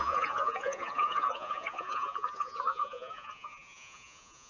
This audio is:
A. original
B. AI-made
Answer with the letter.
B